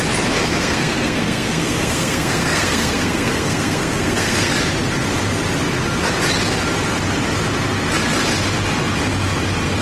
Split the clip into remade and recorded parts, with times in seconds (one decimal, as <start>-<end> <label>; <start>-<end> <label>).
0.0-0.5 recorded; 0.5-4.5 remade; 4.5-9.8 recorded